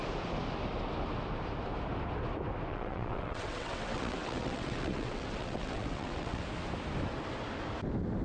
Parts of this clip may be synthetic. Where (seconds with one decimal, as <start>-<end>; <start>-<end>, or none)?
2.7-6.4